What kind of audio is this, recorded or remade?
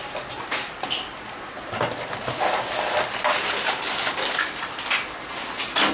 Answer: recorded